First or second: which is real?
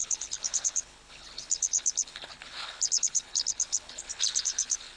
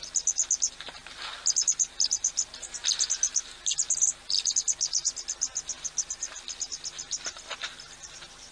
second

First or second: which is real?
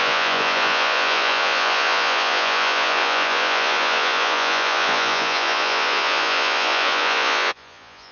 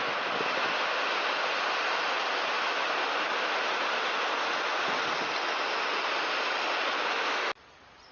second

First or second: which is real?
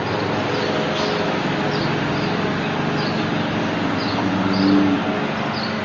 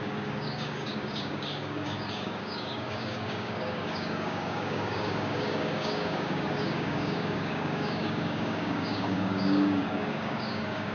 first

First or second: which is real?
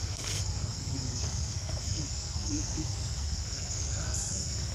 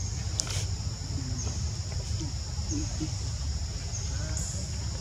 second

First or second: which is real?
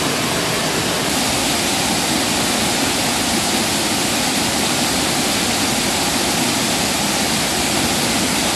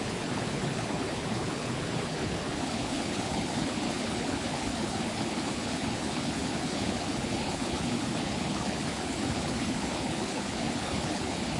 first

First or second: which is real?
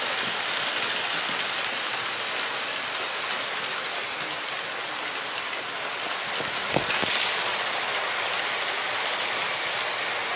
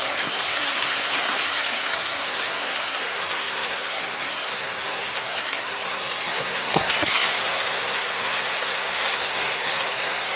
first